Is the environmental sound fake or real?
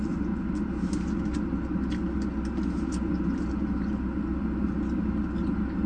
real